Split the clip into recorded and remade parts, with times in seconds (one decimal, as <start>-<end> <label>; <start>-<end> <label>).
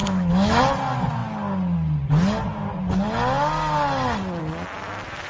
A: 0.0-0.6 remade; 0.6-5.3 recorded